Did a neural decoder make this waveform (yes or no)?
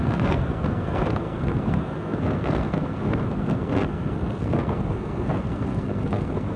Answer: yes